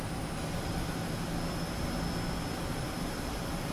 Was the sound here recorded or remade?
recorded